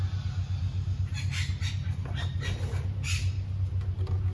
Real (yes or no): yes